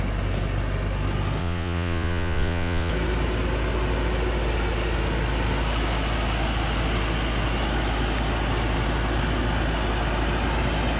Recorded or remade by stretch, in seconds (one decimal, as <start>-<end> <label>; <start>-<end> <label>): 0.0-1.4 recorded; 1.4-2.9 remade; 2.9-11.0 recorded